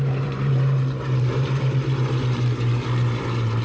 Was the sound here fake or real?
fake